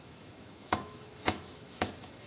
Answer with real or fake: fake